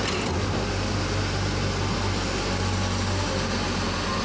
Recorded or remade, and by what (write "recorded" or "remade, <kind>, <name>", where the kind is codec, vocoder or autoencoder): recorded